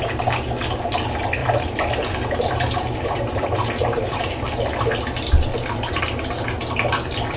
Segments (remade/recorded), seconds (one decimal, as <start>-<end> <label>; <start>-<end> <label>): 0.0-1.4 recorded; 1.4-4.8 remade; 4.8-5.5 recorded; 5.5-6.0 remade; 6.0-7.4 recorded